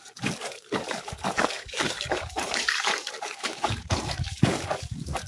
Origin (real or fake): fake